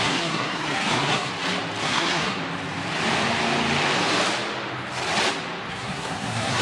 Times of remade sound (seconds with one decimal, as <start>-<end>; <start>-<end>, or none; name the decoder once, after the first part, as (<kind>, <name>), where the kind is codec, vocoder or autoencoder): 0.0-1.3 (codec, SNAC); 1.8-2.4; 5.7-6.6